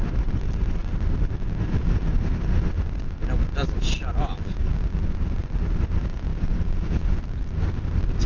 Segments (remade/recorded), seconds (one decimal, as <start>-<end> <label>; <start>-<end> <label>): 0.0-6.3 recorded; 6.3-7.1 remade; 7.1-8.3 recorded